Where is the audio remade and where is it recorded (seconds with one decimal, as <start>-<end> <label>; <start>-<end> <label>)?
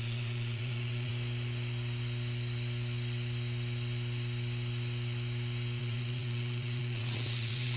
0.0-1.1 remade; 1.1-5.8 recorded; 5.8-7.8 remade